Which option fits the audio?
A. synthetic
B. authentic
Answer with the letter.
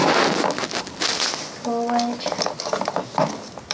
B